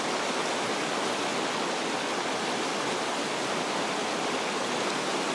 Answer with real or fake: real